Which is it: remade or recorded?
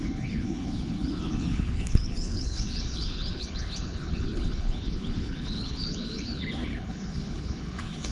remade